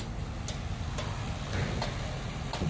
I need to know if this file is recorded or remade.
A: recorded